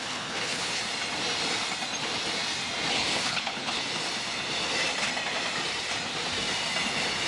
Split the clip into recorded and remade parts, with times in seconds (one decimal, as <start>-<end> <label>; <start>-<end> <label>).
0.0-0.8 remade; 0.8-2.9 recorded; 2.9-3.8 remade; 3.8-7.3 recorded